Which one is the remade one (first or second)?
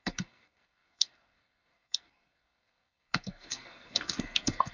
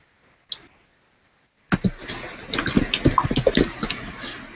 first